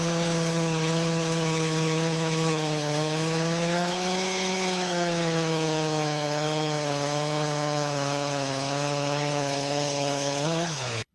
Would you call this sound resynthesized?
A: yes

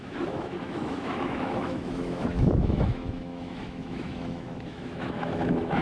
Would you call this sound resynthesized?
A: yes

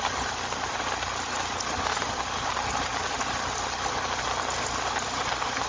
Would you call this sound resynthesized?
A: no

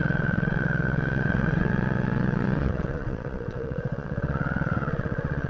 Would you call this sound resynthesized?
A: yes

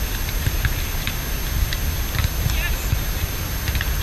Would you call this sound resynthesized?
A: no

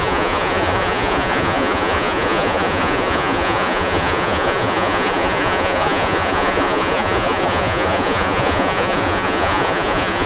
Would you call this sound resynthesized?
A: yes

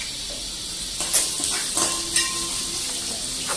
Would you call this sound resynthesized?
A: no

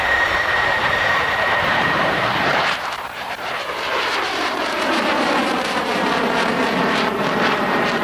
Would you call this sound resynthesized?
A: yes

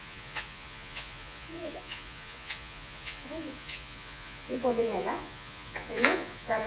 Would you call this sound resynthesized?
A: yes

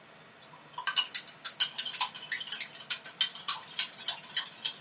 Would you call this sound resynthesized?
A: no